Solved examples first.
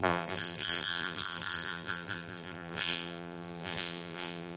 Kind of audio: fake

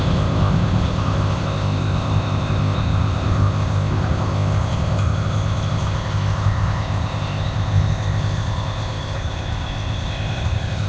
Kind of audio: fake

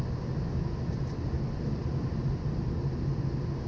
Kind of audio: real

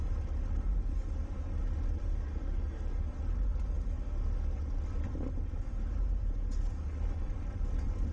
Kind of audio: real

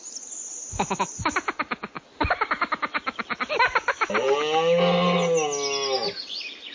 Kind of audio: real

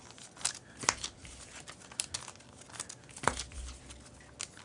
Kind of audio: real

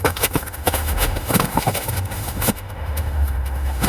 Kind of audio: fake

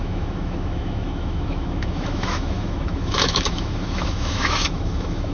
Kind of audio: fake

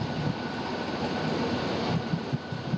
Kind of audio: real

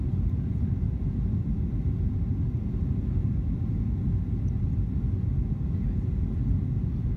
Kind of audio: real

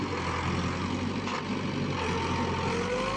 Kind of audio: real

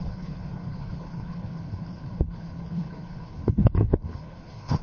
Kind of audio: fake